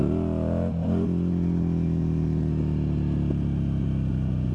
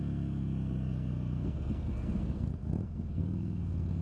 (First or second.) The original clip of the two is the first